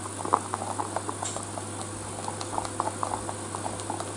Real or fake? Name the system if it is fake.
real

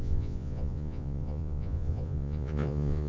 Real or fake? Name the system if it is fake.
fake, vocoder, Vocos